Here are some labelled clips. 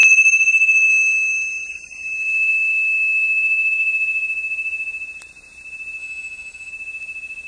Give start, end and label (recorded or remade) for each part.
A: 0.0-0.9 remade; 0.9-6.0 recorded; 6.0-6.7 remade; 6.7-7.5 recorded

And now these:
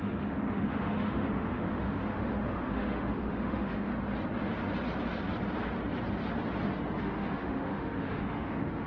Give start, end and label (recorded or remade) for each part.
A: 0.0-3.9 remade; 3.9-7.0 recorded; 7.0-8.9 remade

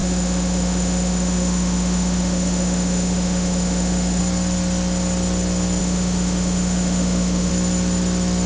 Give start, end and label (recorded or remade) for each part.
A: 0.0-4.2 remade; 4.2-5.8 recorded; 5.8-7.5 remade; 7.5-8.5 recorded

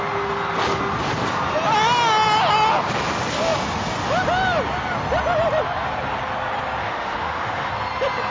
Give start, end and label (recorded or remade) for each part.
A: 0.0-6.8 recorded; 6.8-7.7 remade; 7.7-8.3 recorded

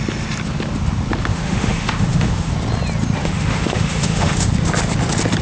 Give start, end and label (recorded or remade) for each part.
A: 0.0-1.3 recorded; 1.3-2.5 remade; 2.5-3.2 recorded; 3.2-4.5 remade; 4.5-5.4 recorded

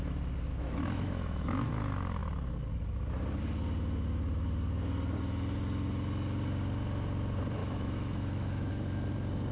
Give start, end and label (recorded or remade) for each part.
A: 0.0-0.5 recorded; 0.5-1.7 remade; 1.7-7.6 recorded; 7.6-8.7 remade; 8.7-9.5 recorded